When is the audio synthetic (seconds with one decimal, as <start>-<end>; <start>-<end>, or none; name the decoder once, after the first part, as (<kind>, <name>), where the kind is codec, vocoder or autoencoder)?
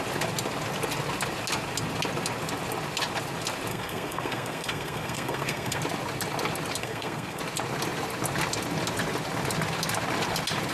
3.7-5.8 (codec, SNAC); 6.8-7.4